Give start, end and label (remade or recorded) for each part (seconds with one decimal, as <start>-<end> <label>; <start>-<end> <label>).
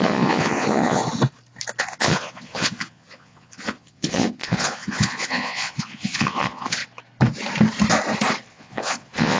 0.0-1.0 remade; 1.0-1.8 recorded; 1.8-6.8 remade; 6.8-8.5 recorded; 8.5-9.4 remade